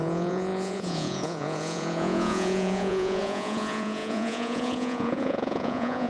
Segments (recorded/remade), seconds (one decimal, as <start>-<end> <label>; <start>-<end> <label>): 0.0-6.1 remade